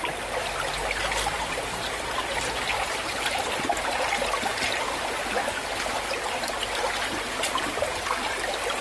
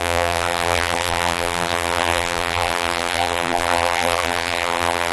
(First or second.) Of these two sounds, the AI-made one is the second